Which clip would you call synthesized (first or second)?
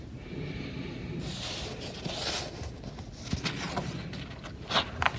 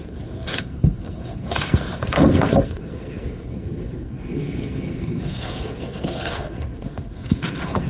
second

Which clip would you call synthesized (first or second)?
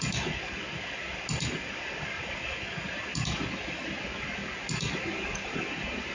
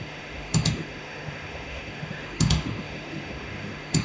second